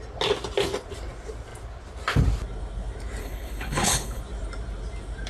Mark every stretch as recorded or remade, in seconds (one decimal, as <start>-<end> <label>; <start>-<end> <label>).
0.0-3.2 recorded; 3.2-4.2 remade; 4.2-5.3 recorded